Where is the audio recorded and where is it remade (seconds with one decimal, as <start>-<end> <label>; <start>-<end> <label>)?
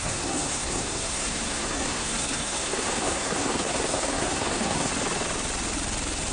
0.0-4.9 remade; 4.9-6.3 recorded